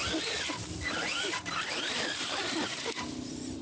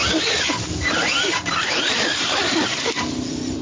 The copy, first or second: first